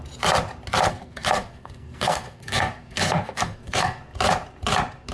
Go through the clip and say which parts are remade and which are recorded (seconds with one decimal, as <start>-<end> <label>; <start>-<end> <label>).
0.0-0.9 recorded; 0.9-4.0 remade; 4.0-5.1 recorded